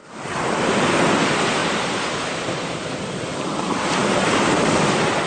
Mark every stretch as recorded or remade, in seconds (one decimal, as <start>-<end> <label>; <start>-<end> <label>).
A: 0.0-0.9 remade; 0.9-1.6 recorded; 1.6-4.8 remade; 4.8-5.3 recorded